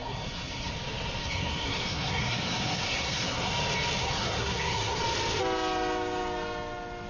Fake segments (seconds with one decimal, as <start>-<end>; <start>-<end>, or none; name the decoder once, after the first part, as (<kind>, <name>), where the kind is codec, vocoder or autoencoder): 0.0-0.7 (codec, SNAC); 1.2-3.5; 4.0-5.0